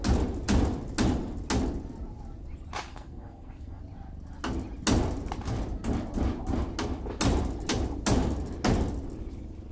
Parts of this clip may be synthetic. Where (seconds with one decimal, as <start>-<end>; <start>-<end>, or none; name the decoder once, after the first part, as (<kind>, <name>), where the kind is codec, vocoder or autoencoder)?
2.9-3.8 (codec, SNAC)